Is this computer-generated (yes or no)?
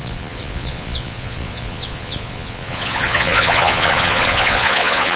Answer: yes